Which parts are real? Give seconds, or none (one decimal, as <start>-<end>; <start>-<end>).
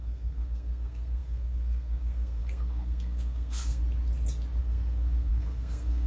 3.8-4.6